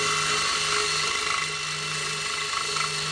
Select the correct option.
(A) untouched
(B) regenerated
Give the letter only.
A